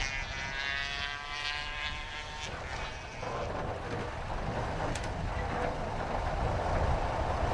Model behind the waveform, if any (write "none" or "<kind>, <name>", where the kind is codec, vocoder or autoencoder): none